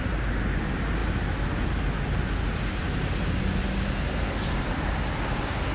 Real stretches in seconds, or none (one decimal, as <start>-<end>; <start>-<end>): 0.0-5.7